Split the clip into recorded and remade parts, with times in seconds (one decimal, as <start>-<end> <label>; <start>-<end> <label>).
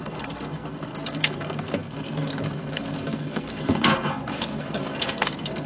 0.0-5.7 remade